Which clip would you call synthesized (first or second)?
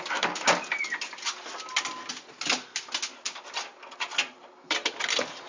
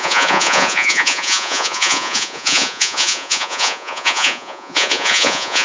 second